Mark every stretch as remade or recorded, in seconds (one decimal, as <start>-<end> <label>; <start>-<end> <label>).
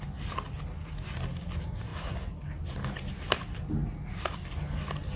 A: 0.0-5.2 recorded